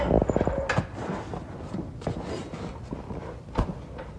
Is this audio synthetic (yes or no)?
no